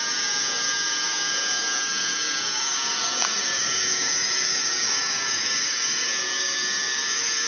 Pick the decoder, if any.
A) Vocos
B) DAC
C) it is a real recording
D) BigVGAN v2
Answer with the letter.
B